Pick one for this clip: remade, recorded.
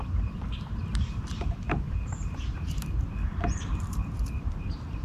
remade